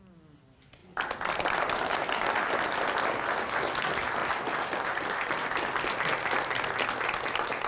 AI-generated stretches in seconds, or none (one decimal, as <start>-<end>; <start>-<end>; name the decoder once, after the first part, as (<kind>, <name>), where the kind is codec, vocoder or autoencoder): none